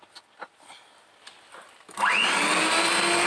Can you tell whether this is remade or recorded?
recorded